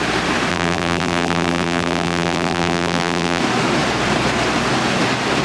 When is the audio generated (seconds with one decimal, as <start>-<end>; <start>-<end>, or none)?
0.5-3.4